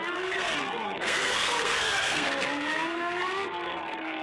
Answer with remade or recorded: remade